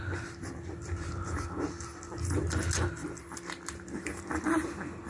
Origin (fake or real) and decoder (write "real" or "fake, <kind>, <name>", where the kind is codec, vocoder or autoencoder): real